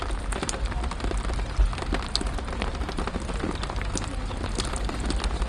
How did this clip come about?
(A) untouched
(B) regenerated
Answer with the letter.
A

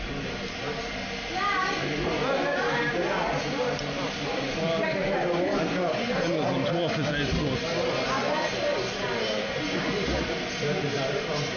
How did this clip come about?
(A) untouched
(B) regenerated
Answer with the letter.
A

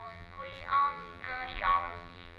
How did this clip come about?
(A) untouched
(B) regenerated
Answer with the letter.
B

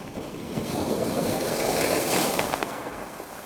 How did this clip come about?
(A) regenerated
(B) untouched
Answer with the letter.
A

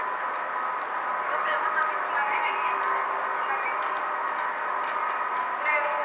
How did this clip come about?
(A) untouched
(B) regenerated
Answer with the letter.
A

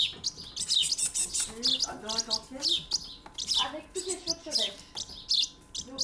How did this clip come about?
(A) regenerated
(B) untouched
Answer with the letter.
B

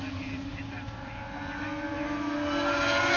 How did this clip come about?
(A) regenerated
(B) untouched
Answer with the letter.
B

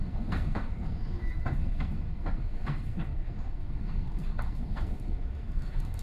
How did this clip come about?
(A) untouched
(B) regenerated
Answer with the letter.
B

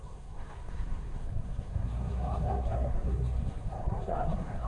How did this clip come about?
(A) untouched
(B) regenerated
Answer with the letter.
B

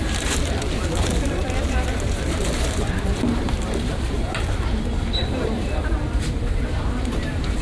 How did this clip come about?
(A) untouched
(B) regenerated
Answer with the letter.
B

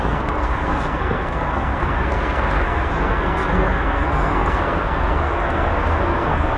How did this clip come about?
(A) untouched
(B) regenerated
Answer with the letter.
B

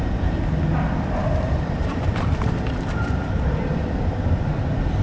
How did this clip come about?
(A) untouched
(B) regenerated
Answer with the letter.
B